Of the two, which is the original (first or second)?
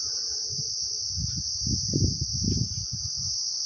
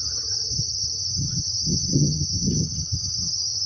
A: first